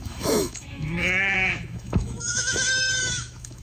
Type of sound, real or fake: fake